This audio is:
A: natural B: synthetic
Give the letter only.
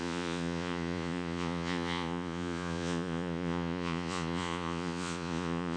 B